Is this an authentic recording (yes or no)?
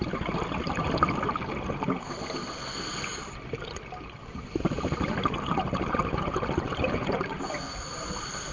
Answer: yes